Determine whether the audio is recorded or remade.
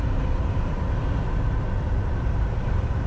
remade